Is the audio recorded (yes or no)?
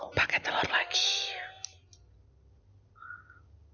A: yes